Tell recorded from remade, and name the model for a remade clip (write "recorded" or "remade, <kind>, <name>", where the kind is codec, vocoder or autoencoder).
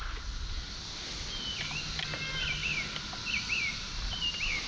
recorded